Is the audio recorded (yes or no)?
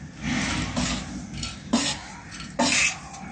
yes